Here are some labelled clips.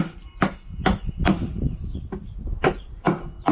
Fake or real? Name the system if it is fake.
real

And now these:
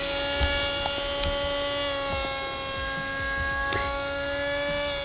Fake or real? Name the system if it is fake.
real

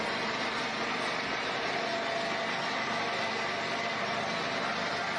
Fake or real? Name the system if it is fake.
real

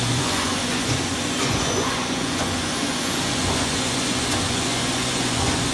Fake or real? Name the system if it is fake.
fake, vocoder, Vocos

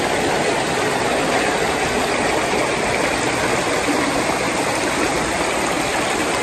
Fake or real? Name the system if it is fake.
real